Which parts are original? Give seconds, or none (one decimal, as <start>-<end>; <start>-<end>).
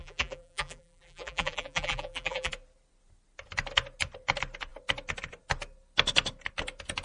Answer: 2.5-7.0